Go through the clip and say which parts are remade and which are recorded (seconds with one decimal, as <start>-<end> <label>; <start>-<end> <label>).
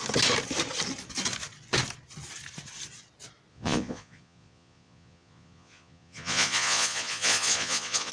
0.0-3.5 recorded; 3.5-8.1 remade